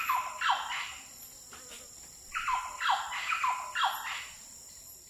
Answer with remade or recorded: recorded